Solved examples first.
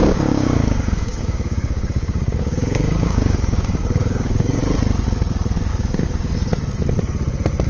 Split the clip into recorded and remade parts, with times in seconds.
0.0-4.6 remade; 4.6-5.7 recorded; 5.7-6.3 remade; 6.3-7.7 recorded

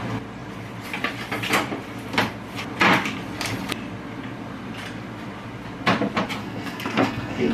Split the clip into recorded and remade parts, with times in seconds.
0.0-6.4 recorded; 6.4-7.5 remade